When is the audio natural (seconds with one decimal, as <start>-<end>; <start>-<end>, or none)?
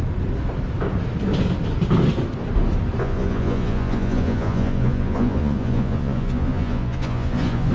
0.0-3.0